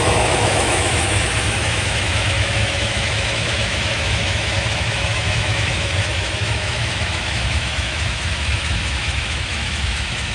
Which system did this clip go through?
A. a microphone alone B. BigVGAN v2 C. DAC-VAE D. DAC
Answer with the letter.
C